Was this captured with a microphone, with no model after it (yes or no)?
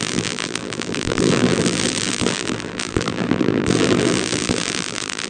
no